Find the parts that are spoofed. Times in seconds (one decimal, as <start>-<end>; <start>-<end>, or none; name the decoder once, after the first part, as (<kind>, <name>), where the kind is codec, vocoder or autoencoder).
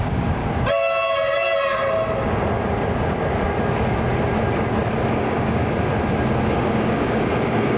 0.0-0.4 (codec, DAC); 5.1-5.6; 6.5-7.8